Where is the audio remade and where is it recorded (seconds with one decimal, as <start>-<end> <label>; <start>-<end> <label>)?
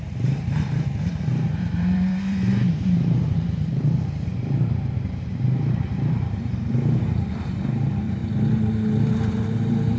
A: 0.0-8.2 remade; 8.2-9.3 recorded; 9.3-10.0 remade